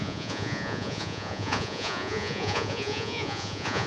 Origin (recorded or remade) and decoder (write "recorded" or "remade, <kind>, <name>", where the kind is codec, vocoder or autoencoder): remade, vocoder, Vocos